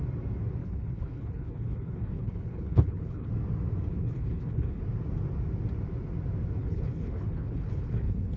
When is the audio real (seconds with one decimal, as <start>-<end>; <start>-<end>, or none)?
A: 0.0-0.6; 3.3-3.9; 4.8-6.6